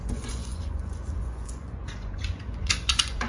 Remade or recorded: remade